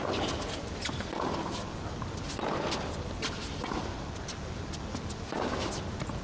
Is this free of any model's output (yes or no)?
yes